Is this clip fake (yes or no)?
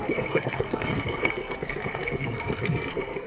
yes